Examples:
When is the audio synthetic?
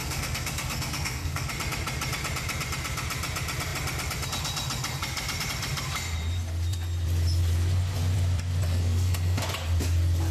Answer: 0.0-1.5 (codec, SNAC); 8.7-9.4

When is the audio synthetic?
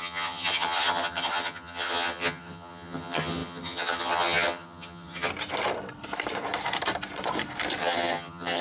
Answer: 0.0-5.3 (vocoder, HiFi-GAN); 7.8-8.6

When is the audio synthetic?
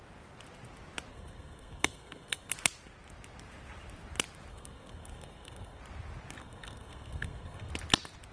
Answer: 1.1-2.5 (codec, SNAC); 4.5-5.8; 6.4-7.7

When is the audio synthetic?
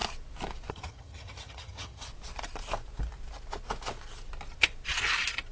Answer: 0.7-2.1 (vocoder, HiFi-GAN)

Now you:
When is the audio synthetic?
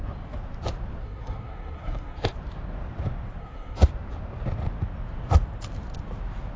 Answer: 1.0-2.3 (codec, SNAC); 3.4-3.9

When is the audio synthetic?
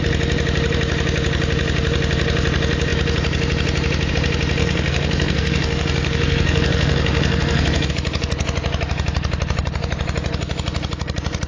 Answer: 4.6-7.9 (codec, SNAC)